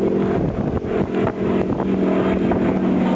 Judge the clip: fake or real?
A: real